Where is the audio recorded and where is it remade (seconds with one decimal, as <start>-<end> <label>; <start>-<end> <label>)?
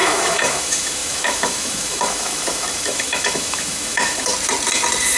0.0-4.3 remade; 4.3-5.2 recorded